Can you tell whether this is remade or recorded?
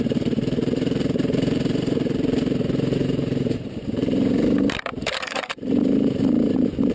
remade